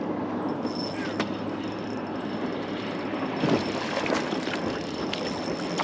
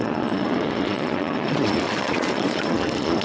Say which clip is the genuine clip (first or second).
first